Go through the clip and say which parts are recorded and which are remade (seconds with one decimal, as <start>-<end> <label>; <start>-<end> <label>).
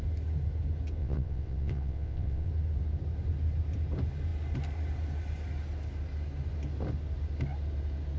0.0-1.0 recorded; 1.0-2.5 remade; 2.5-8.2 recorded